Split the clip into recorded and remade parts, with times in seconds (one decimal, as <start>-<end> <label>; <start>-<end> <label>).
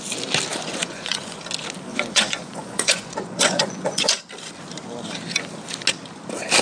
0.0-0.8 recorded; 0.8-1.4 remade; 1.4-1.9 recorded; 1.9-4.2 remade; 4.2-6.6 recorded